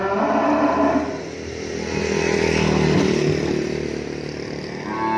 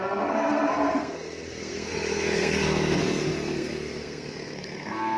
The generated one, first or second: second